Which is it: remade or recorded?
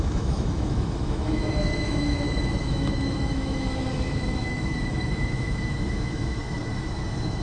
remade